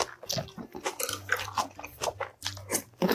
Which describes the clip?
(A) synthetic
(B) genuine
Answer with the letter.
B